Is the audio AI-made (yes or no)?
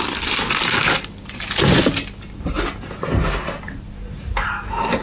no